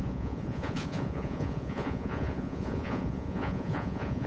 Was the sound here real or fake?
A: fake